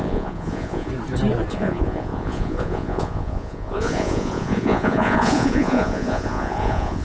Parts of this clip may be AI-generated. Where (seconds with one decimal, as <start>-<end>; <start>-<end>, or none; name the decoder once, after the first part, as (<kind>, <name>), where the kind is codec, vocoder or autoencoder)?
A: 0.0-0.9 (vocoder, Vocos); 1.5-7.0